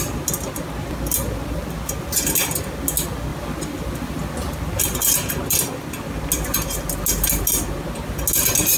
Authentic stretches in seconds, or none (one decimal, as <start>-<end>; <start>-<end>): 0.0-8.8